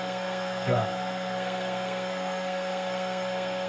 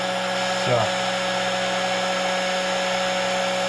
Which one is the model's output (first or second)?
first